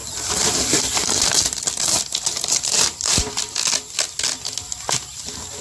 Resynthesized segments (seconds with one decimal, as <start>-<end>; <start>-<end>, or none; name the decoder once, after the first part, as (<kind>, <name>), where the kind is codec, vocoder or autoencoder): 0.0-3.3 (vocoder, BigVGAN v2)